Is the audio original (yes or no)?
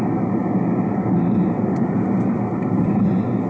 yes